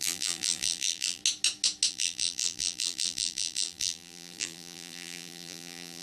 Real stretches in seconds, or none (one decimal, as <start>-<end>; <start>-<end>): 1.2-1.9